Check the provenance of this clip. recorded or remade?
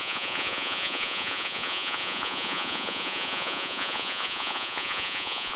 remade